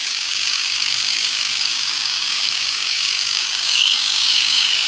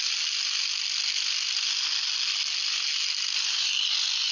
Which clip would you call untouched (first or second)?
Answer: second